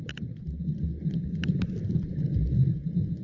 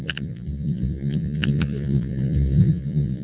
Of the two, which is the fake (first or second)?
second